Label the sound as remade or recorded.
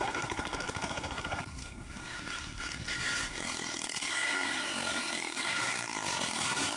remade